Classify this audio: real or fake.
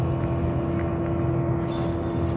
real